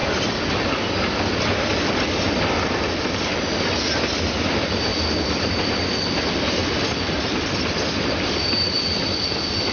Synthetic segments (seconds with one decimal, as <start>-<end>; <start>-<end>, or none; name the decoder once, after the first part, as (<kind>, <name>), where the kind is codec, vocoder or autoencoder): none